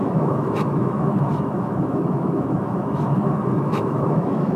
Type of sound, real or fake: fake